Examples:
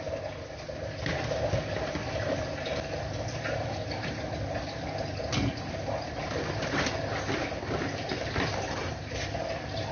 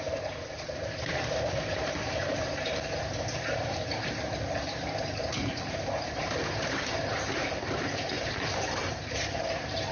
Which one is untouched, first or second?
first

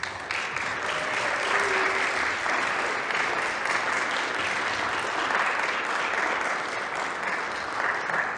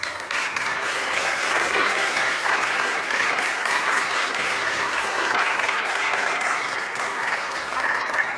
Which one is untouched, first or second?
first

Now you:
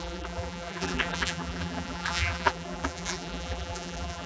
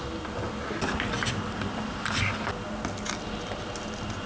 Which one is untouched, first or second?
second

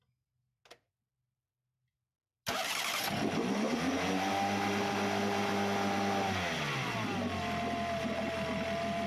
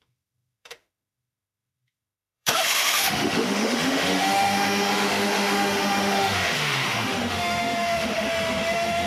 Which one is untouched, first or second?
first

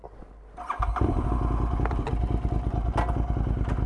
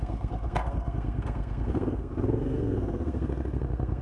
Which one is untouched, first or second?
first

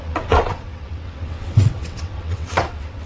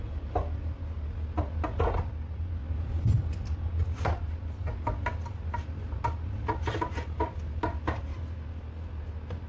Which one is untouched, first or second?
second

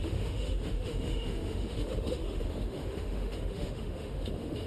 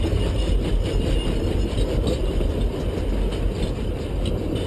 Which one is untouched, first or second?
second